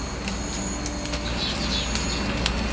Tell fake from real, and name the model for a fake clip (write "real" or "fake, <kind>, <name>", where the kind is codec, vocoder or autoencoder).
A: real